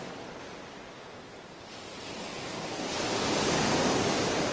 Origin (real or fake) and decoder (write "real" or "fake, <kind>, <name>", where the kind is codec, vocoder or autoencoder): real